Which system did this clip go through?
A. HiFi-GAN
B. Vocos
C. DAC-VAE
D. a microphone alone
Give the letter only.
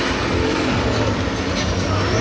D